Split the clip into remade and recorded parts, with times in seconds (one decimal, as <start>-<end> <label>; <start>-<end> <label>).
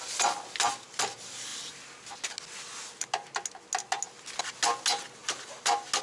0.0-6.0 recorded